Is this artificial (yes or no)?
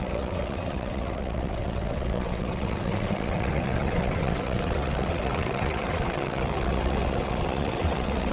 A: yes